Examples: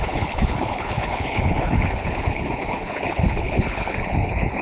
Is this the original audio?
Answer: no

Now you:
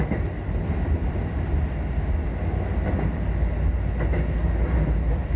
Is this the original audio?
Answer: yes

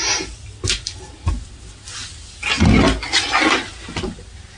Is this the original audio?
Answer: yes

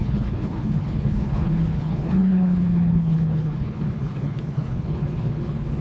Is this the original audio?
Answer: no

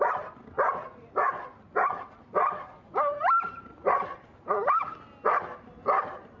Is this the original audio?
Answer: yes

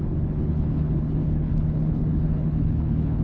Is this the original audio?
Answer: no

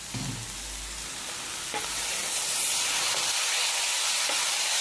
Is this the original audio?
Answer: yes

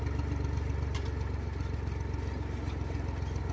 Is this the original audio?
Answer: yes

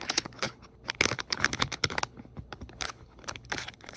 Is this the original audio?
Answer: no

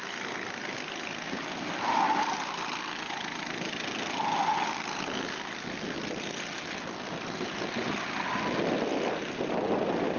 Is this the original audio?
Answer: yes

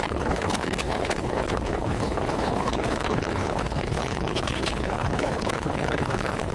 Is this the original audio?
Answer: no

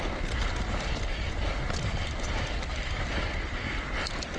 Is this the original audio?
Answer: yes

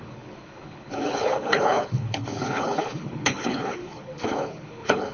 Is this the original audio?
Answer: no